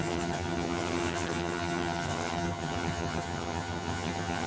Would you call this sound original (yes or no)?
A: no